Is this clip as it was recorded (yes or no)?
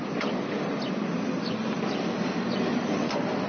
yes